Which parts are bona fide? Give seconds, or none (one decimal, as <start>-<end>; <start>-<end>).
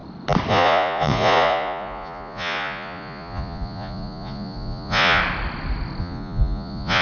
0.0-0.5; 5.2-6.0